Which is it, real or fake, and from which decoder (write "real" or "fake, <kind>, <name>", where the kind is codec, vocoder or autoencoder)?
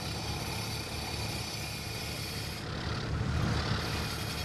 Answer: real